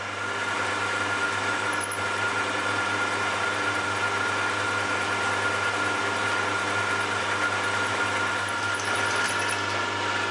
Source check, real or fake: real